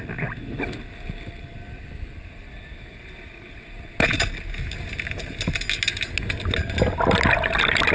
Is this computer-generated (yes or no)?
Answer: no